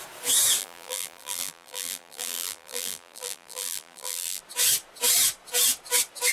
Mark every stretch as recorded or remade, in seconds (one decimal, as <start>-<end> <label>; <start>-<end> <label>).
0.0-0.6 recorded; 0.6-4.4 remade; 4.4-6.3 recorded